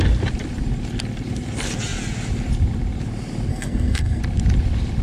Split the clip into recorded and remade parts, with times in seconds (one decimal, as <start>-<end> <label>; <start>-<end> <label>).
0.0-3.5 recorded; 3.5-4.2 remade; 4.2-5.0 recorded